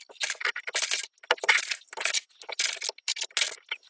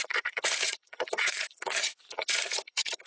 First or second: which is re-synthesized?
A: second